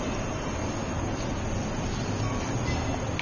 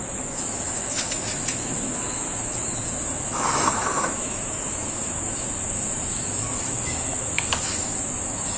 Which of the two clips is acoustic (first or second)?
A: first